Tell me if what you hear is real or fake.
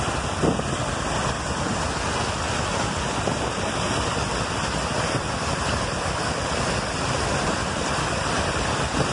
real